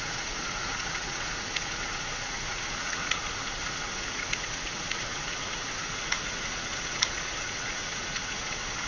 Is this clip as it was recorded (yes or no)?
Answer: no